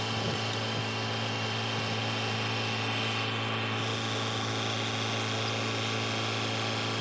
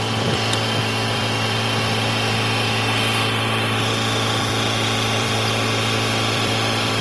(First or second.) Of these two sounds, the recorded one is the first